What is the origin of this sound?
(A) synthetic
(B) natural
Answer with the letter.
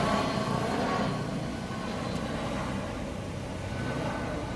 B